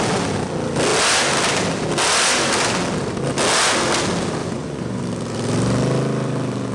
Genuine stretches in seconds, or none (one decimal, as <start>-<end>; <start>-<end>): 0.0-4.4; 5.0-6.7